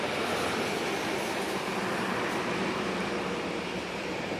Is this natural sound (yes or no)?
yes